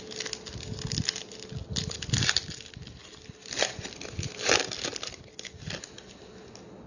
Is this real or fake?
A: real